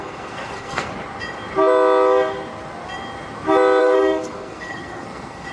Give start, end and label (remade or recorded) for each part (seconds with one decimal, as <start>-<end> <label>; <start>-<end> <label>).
0.0-0.9 remade; 0.9-3.8 recorded; 3.8-5.5 remade